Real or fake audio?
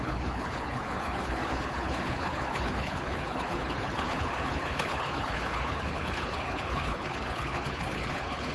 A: fake